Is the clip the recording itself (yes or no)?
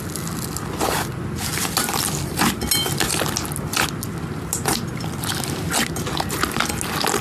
yes